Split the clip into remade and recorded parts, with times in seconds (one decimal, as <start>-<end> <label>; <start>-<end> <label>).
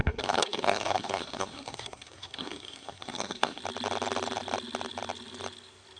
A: 0.0-3.6 remade; 3.6-6.0 recorded